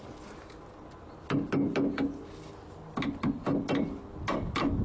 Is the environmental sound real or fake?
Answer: real